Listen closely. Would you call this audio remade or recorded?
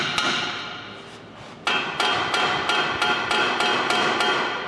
recorded